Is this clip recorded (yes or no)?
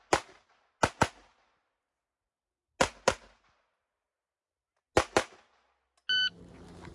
yes